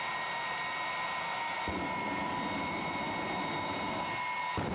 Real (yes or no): no